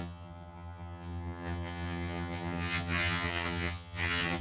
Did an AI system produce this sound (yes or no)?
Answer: yes